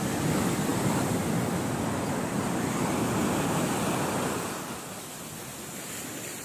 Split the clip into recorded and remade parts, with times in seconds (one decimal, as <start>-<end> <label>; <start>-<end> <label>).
0.0-6.4 recorded